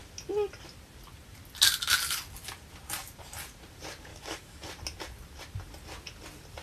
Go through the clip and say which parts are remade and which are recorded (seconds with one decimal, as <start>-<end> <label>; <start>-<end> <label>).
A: 0.0-4.1 recorded; 4.1-4.7 remade; 4.7-6.6 recorded